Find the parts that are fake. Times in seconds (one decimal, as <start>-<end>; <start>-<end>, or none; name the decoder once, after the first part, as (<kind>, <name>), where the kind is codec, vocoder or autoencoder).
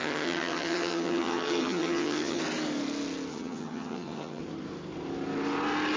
0.0-2.4 (vocoder, HiFi-GAN); 3.3-4.4